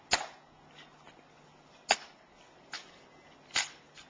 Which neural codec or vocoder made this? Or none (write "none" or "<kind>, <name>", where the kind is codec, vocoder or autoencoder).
none